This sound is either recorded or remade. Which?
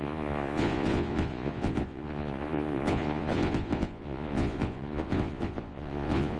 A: remade